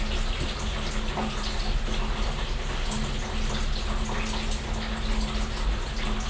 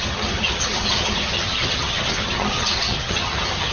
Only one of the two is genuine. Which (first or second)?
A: first